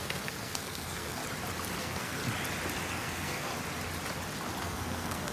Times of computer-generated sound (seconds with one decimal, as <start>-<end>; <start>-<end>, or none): 0.0-1.2; 1.8-2.2; 2.9-3.5; 4.6-5.3